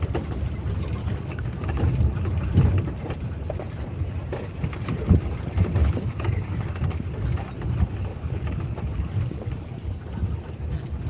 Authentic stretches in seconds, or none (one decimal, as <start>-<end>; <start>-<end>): 0.0-1.0; 1.8-5.8; 6.8-8.1; 10.1-11.1